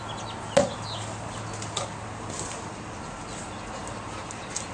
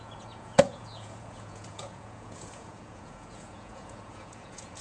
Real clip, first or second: first